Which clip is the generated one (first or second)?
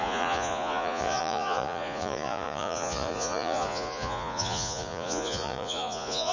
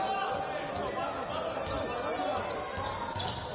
first